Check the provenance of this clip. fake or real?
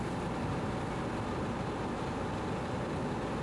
fake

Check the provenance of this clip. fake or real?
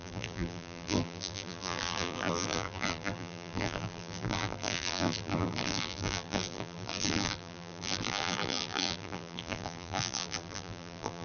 fake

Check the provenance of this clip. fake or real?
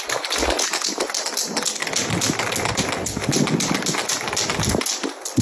real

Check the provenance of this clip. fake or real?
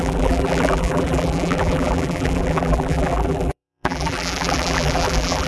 fake